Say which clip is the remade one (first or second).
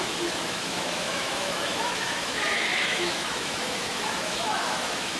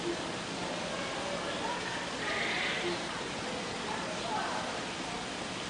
first